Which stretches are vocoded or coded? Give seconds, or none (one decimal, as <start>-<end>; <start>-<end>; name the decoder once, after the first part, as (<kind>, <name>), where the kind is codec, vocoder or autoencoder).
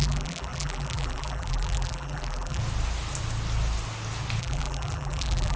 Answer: 0.0-2.6 (vocoder, BigVGAN v2); 4.4-5.6